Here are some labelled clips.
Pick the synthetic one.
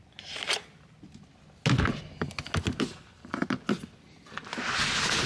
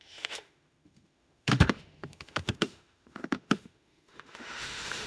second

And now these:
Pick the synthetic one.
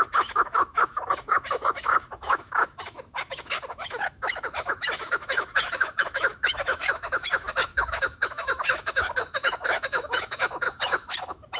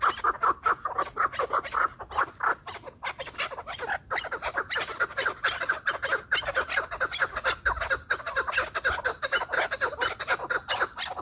first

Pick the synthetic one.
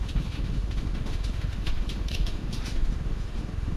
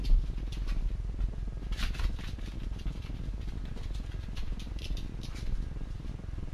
first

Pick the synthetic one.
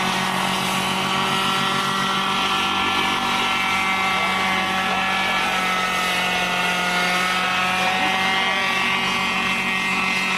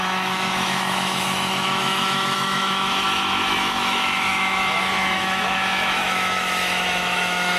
second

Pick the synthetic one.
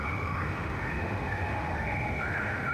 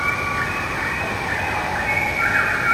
first